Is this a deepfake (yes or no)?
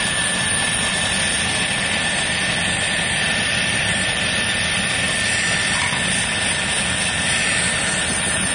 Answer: no